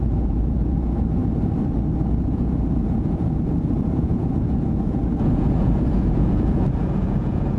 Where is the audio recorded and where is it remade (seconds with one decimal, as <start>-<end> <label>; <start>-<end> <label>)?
0.0-1.2 remade; 1.2-2.2 recorded; 2.2-7.6 remade